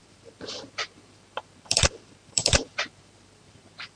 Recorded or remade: remade